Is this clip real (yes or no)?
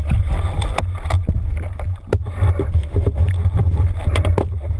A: yes